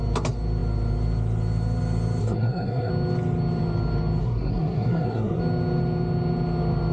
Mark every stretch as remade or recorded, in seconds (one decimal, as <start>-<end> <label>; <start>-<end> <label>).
0.0-2.2 recorded; 2.2-2.9 remade; 2.9-4.2 recorded; 4.2-5.4 remade; 5.4-6.9 recorded